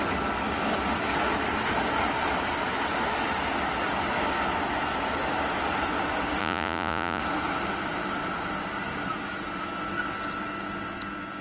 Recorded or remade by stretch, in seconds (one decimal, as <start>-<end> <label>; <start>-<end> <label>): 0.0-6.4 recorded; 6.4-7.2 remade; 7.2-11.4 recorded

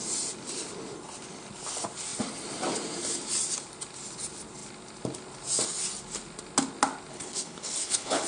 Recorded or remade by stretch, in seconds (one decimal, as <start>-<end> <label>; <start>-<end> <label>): 0.0-7.1 recorded; 7.1-8.3 remade

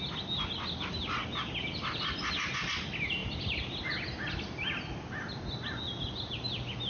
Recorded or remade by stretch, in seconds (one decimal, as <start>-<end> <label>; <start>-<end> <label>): 0.0-6.9 recorded

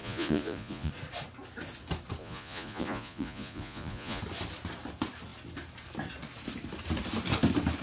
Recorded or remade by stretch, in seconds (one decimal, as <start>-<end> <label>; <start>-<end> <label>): 0.0-0.9 remade; 0.9-2.2 recorded; 2.2-4.2 remade; 4.2-7.8 recorded